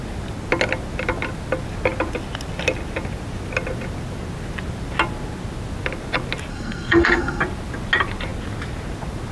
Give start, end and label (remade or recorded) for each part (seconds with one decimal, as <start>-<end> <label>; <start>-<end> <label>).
0.0-6.5 recorded; 6.5-7.4 remade; 7.4-9.3 recorded